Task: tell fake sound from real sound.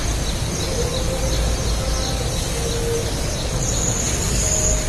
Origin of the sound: real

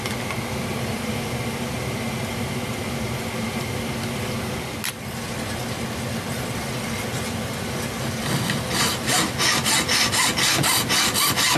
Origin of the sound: real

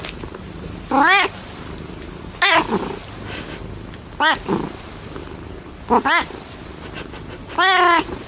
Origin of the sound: real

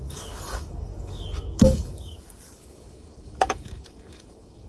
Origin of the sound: fake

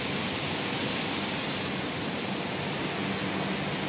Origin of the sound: real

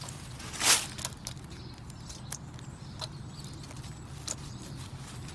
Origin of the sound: real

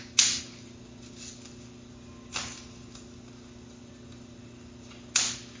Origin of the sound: real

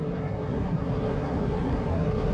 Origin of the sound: fake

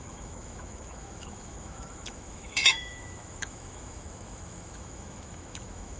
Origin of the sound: fake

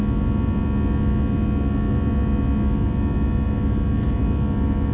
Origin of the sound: real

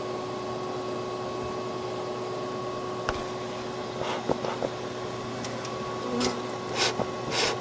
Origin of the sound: real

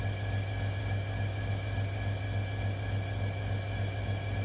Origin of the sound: real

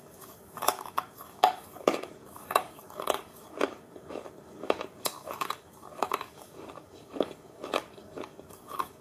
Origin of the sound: fake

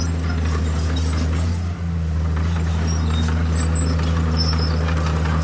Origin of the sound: real